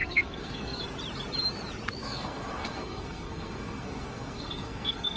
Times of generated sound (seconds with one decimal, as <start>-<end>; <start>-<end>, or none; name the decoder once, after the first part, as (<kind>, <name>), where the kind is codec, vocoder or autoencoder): 0.0-0.8 (codec, SNAC); 2.0-5.2